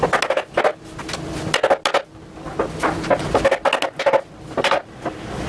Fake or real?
real